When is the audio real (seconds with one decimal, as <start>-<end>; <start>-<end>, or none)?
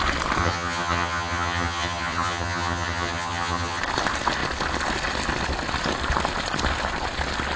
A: 0.0-0.4; 3.8-7.6